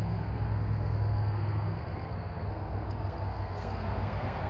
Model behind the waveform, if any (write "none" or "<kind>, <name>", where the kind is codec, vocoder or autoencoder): codec, SNAC